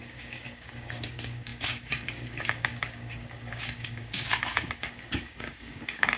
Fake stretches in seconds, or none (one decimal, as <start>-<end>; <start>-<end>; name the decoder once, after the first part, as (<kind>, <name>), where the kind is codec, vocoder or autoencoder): 0.0-6.2 (codec, DAC)